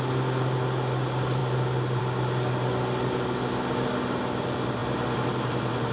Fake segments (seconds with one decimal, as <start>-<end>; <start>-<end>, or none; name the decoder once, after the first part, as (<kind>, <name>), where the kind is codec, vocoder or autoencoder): none